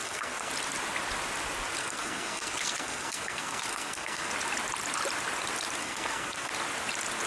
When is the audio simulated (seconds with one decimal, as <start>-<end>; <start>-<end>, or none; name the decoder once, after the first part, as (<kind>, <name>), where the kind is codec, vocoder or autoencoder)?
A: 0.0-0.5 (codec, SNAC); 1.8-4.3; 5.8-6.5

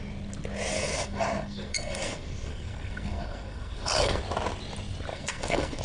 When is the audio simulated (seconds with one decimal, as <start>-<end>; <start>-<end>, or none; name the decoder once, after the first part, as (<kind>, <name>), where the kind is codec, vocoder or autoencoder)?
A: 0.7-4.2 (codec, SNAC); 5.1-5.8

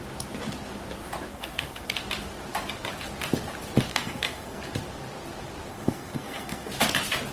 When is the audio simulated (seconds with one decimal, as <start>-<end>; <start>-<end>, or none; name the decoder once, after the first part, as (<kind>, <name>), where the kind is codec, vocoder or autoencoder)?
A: 1.3-2.0 (codec, SNAC); 3.9-4.6; 5.7-6.7